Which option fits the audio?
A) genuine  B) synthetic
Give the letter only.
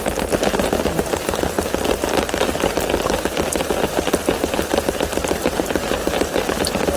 A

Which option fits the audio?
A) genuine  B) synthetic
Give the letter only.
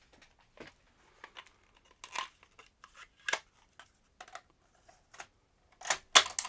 A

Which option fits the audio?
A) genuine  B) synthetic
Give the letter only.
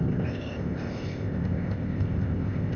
B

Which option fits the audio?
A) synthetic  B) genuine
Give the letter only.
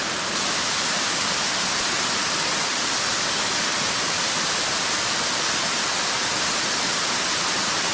B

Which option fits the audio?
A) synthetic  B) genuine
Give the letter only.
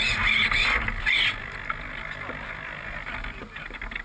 B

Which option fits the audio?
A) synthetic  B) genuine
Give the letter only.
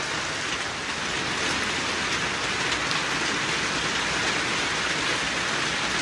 B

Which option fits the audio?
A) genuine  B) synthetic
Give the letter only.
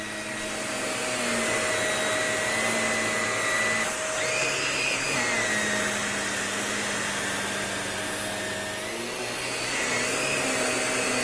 A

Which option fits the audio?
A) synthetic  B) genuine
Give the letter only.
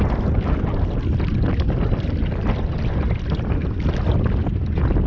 B